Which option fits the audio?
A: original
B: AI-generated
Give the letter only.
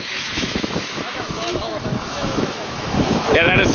B